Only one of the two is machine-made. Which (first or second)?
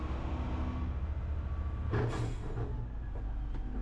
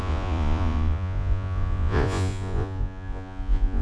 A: second